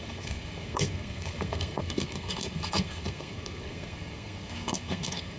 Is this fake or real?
fake